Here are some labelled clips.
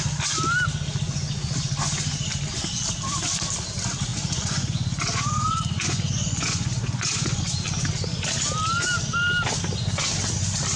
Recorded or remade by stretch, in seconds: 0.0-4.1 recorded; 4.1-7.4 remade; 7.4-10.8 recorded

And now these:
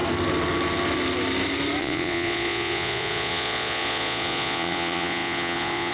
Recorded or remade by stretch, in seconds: 0.0-1.8 recorded; 1.8-5.9 remade

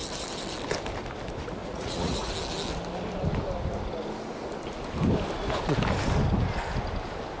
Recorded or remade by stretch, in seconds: 0.0-1.6 recorded; 1.6-2.3 remade; 2.3-7.4 recorded